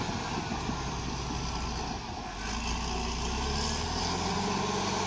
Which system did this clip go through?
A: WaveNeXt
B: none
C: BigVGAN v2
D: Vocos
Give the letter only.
B